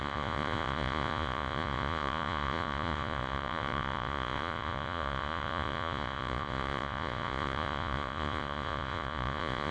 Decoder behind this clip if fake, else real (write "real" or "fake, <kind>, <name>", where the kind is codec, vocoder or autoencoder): fake, vocoder, Vocos